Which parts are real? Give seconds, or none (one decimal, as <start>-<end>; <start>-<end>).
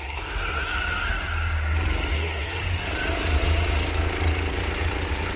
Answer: 0.7-2.1; 2.6-5.4